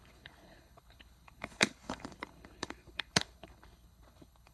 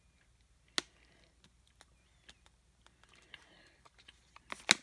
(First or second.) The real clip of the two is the second